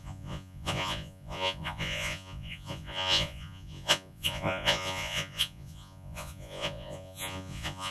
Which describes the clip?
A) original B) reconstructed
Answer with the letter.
B